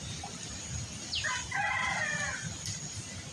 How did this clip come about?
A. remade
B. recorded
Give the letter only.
B